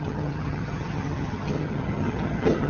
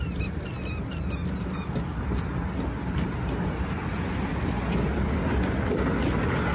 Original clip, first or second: second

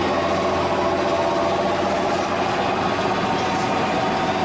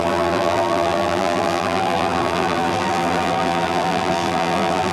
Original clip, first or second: first